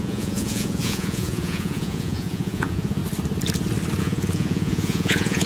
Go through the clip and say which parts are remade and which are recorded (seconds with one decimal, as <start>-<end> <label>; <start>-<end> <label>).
0.0-3.0 remade; 3.0-4.0 recorded; 4.0-5.5 remade